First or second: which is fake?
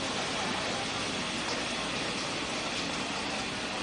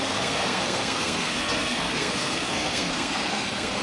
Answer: second